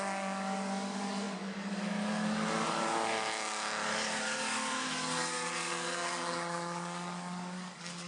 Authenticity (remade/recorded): remade